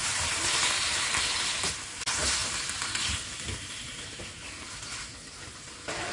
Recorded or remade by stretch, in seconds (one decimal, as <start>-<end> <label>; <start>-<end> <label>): 0.0-1.6 remade; 1.6-6.1 recorded